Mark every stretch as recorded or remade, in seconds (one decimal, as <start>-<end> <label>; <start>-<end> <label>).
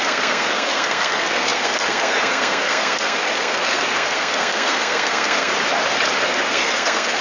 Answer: 0.0-5.5 remade; 5.5-6.2 recorded; 6.2-7.2 remade